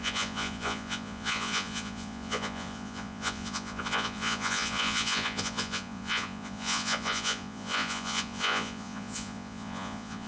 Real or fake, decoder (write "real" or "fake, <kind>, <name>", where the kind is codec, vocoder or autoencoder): fake, vocoder, Vocos